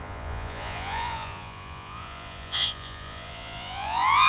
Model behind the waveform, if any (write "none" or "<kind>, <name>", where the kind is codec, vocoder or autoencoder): vocoder, Vocos